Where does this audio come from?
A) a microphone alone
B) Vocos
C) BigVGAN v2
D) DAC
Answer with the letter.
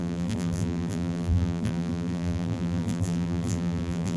C